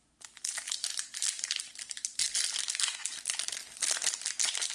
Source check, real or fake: real